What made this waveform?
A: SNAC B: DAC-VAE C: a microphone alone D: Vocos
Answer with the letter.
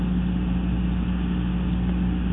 C